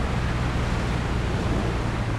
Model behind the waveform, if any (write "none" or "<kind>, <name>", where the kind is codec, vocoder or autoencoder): none